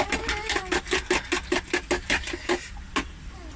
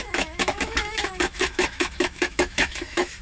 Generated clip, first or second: second